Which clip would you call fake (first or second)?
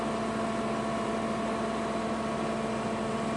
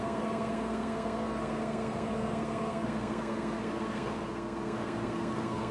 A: second